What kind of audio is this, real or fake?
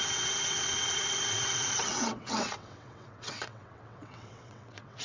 fake